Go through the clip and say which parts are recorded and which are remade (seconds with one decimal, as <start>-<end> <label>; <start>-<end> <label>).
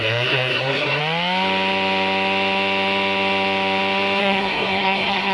0.0-1.0 remade; 1.0-4.2 recorded; 4.2-5.3 remade